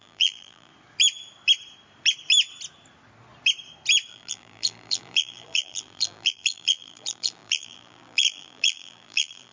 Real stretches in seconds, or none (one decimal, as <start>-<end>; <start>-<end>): 0.7-4.1